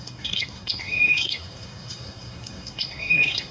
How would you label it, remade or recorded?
remade